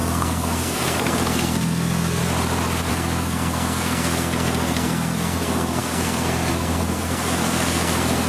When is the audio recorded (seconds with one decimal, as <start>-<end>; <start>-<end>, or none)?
2.2-2.9